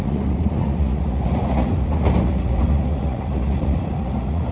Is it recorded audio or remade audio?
remade